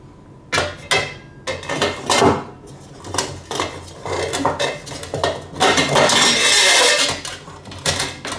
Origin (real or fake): real